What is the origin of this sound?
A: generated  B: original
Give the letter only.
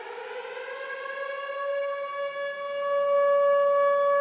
B